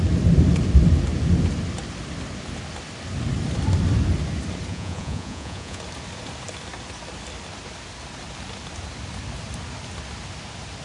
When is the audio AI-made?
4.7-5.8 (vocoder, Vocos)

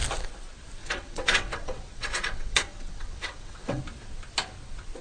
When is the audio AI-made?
0.8-3.8 (vocoder, WaveNeXt)

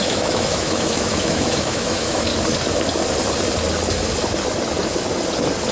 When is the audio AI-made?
0.0-2.3 (autoencoder, DAC-VAE)

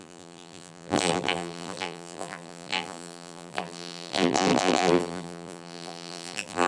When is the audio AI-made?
0.0-6.7 (vocoder, BigVGAN v2)